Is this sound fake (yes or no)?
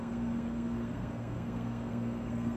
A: yes